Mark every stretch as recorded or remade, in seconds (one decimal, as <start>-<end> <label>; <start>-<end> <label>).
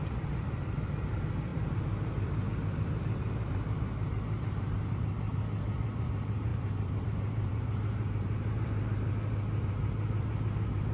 0.0-10.9 remade